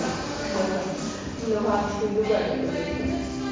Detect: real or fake real